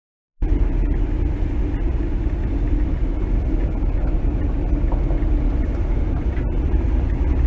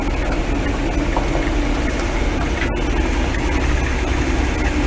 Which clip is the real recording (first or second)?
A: second